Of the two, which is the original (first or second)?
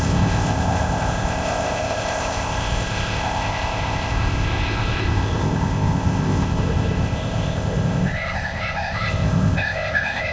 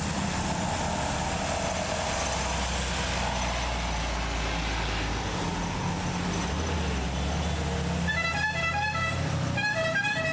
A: second